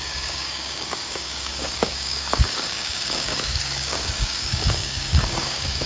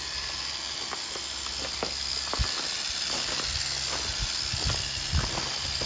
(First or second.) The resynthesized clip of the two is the first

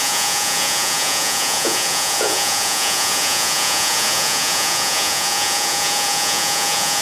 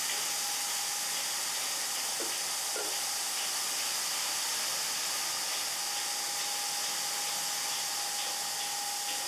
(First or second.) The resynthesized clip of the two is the first